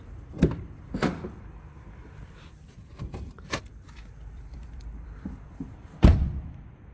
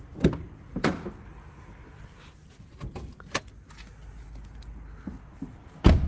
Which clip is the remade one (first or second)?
first